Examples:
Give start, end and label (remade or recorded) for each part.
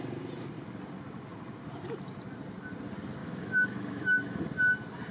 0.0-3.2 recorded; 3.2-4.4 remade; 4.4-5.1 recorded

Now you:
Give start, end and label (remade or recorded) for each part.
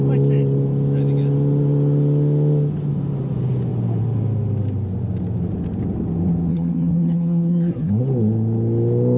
0.0-6.5 recorded; 6.5-8.0 remade; 8.0-9.2 recorded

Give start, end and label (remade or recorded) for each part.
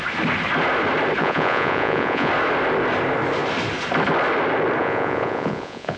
0.0-1.2 recorded; 1.2-2.3 remade; 2.3-4.8 recorded; 4.8-6.0 remade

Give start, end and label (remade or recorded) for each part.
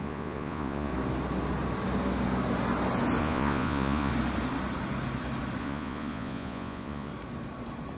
0.0-0.9 remade; 0.9-3.2 recorded; 3.2-4.1 remade; 4.1-5.6 recorded; 5.6-7.1 remade; 7.1-8.0 recorded